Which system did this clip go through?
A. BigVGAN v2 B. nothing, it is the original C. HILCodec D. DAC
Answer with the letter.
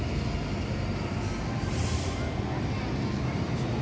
B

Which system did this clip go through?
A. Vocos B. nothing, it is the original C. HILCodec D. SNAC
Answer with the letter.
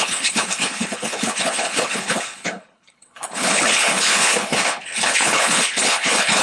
C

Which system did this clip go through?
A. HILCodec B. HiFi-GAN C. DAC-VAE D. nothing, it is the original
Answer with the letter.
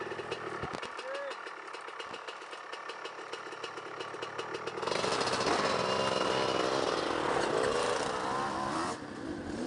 D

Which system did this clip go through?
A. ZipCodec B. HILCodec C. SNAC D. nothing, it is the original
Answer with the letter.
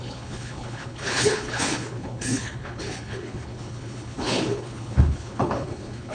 B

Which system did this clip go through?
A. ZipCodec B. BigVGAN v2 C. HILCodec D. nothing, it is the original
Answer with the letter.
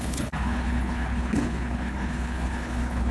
C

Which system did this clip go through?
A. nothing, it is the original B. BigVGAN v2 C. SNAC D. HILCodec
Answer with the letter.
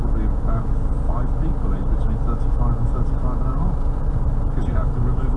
A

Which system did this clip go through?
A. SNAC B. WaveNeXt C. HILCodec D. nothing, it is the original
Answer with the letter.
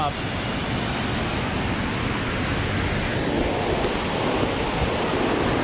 D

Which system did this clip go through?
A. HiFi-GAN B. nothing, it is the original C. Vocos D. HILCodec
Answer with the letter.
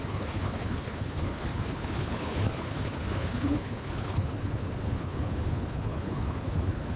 D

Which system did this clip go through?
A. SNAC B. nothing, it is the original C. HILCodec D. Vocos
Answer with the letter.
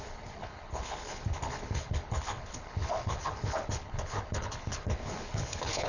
C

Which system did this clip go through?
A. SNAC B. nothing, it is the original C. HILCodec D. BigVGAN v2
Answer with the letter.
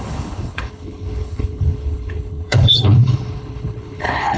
C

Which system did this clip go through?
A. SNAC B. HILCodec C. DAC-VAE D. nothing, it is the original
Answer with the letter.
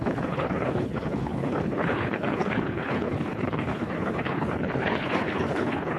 B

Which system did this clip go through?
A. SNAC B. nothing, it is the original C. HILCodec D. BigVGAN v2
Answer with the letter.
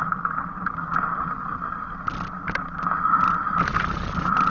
B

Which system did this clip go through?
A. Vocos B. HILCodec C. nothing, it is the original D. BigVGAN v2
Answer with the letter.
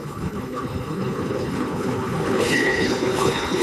B